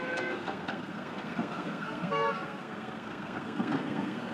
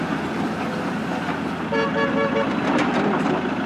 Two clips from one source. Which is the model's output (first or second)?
first